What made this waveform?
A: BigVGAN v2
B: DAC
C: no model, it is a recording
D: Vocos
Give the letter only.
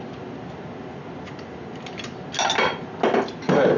C